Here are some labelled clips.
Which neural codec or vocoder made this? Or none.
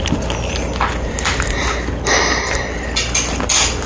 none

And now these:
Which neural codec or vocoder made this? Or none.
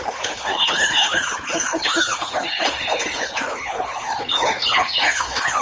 codec, HILCodec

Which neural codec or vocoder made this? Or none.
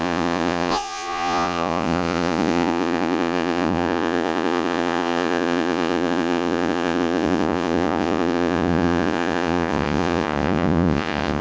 vocoder, Vocos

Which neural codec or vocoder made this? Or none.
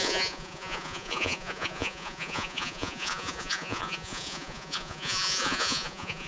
vocoder, Vocos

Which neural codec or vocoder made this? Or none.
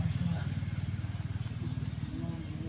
none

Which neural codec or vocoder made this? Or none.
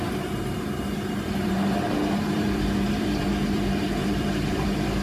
vocoder, BigVGAN v2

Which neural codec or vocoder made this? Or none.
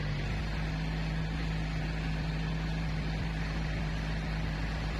none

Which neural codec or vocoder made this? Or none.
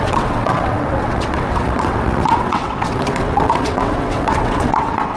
vocoder, WaveNeXt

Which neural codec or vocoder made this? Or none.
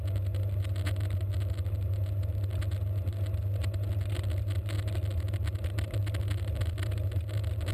none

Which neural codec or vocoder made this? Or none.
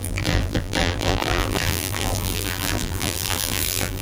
vocoder, BigVGAN v2